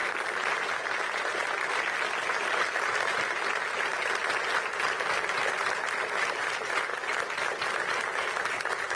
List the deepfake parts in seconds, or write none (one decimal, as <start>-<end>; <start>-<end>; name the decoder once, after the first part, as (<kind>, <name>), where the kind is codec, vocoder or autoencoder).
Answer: none